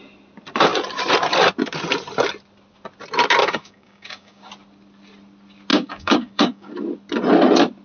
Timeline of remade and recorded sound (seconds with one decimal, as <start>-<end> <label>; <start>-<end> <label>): 0.0-3.4 recorded; 3.4-4.5 remade; 4.5-5.7 recorded; 5.7-6.7 remade; 6.7-7.8 recorded